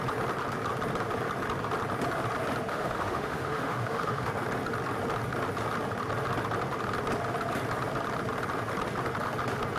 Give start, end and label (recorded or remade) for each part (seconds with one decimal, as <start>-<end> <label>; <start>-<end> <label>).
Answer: 0.0-2.7 recorded; 2.7-4.3 remade; 4.3-9.8 recorded